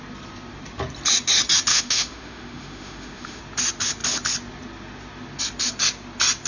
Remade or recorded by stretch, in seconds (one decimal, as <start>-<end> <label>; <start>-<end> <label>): 0.0-1.7 recorded; 1.7-3.4 remade; 3.4-6.5 recorded